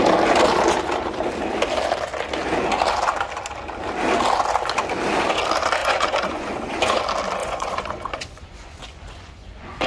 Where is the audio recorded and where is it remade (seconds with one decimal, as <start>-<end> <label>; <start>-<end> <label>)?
0.0-5.8 recorded; 5.8-7.0 remade; 7.0-7.4 recorded; 7.4-9.9 remade